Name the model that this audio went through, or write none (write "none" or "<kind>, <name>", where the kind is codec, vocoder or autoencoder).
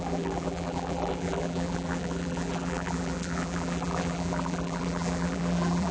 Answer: vocoder, BigVGAN v2